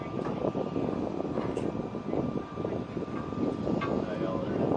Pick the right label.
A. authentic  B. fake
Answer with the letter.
B